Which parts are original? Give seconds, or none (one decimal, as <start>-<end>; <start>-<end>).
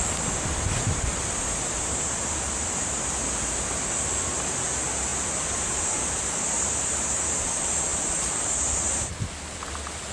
0.0-5.1; 6.3-10.1